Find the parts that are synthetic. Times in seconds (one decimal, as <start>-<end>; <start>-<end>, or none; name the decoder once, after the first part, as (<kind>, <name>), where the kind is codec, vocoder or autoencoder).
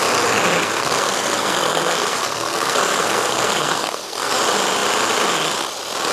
0.6-4.3 (codec, SNAC)